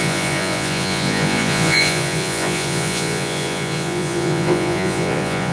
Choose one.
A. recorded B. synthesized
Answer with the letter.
B